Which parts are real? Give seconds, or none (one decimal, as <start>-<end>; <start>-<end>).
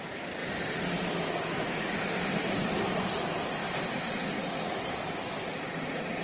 0.0-0.4; 2.7-3.6; 4.2-6.2